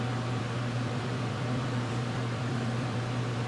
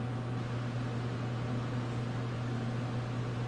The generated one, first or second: first